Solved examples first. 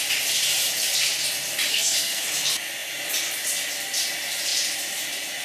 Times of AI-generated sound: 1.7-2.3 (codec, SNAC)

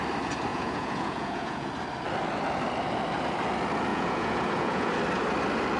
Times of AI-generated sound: 0.5-1.7 (vocoder, Vocos); 3.9-4.9

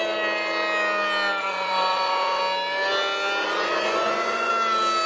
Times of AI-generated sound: 1.4-2.4 (vocoder, Vocos); 3.4-4.5

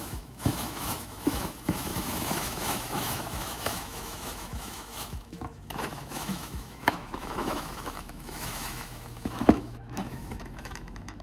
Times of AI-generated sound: 0.0-11.2 (autoencoder, DAC-VAE)

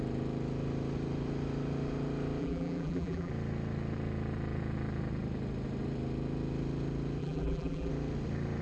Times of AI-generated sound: 2.4-3.3 (vocoder, BigVGAN v2); 7.2-7.9

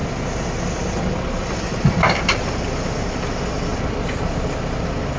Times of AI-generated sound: 0.0-3.1 (vocoder, BigVGAN v2); 3.7-4.2

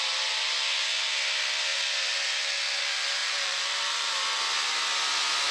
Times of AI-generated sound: 3.2-4.2 (vocoder, BigVGAN v2)